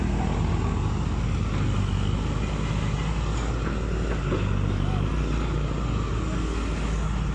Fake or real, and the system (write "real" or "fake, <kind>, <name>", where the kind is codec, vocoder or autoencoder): real